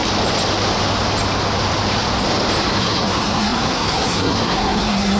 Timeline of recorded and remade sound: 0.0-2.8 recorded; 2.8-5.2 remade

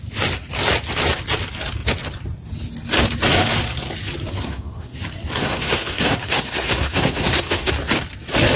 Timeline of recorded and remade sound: 0.0-4.3 recorded; 4.3-5.0 remade; 5.0-5.4 recorded; 5.4-7.7 remade; 7.7-8.6 recorded

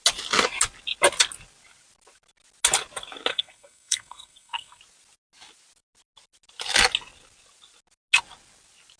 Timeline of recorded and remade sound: 0.0-3.3 recorded; 3.3-4.8 remade; 4.8-9.0 recorded